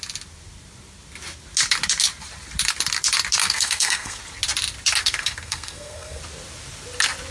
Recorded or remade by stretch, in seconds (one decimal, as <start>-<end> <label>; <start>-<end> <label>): 0.0-3.4 recorded; 3.4-4.2 remade; 4.2-5.0 recorded; 5.0-6.2 remade; 6.2-7.3 recorded